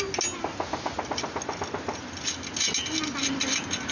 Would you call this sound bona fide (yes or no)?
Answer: yes